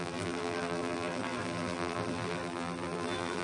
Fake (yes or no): yes